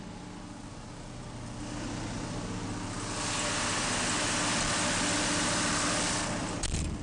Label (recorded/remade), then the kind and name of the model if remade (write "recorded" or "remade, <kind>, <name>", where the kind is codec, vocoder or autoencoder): recorded